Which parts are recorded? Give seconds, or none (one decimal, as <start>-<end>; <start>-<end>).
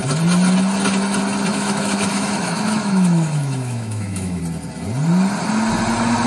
0.0-1.5; 4.4-6.3